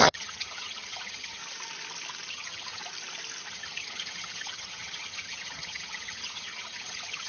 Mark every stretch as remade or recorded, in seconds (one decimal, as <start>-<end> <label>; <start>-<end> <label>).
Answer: 0.0-1.4 remade; 1.4-2.3 recorded; 2.3-2.8 remade; 2.8-3.5 recorded; 3.5-7.3 remade